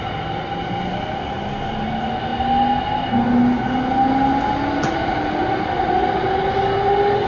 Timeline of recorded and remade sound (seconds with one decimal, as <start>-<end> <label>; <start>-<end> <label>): 0.0-7.3 recorded